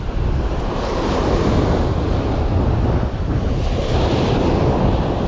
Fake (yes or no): no